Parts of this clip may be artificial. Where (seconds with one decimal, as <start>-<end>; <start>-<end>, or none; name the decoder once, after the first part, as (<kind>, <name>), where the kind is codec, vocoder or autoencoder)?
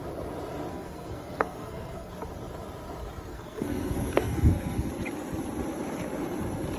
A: 0.7-2.1 (codec, SNAC); 3.3-4.9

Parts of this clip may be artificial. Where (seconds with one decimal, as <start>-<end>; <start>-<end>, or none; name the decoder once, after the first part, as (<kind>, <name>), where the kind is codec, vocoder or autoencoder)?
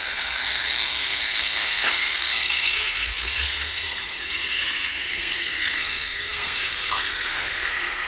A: 0.0-8.1 (codec, SNAC)